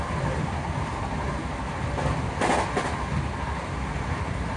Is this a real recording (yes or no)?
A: yes